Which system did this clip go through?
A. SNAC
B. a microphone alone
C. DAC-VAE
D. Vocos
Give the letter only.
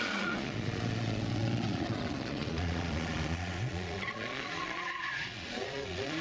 D